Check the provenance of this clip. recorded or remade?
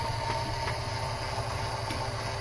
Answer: recorded